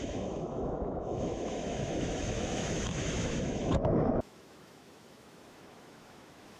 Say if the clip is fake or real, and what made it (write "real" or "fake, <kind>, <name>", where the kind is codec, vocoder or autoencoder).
fake, autoencoder, DAC-VAE